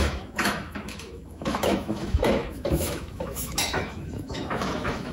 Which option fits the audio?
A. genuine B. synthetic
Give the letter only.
B